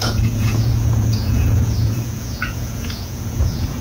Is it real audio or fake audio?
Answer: fake